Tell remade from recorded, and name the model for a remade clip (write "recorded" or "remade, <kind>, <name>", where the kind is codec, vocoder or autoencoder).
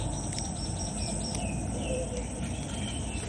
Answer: recorded